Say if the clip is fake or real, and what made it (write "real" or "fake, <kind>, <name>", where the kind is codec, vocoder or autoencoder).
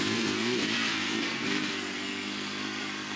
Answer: fake, codec, SNAC